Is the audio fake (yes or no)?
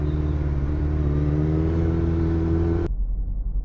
no